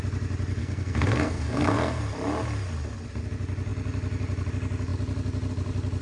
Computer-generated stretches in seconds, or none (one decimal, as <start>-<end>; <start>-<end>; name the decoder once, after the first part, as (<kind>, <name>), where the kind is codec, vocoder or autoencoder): 0.6-2.0 (codec, SNAC)